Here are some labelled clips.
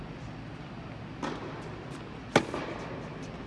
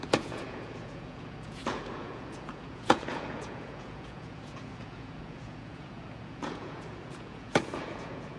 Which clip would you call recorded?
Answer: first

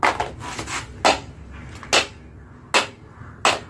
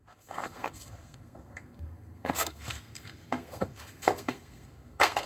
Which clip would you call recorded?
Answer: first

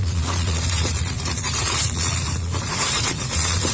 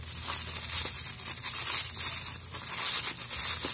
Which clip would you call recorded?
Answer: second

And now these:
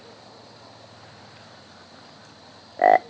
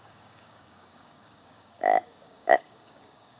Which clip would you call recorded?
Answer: first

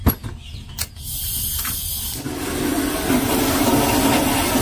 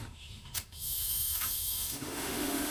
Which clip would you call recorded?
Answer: first